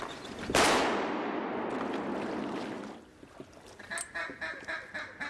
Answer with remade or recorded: recorded